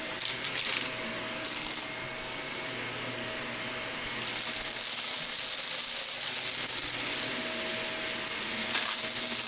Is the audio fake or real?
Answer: real